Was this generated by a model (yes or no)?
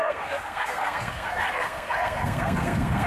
yes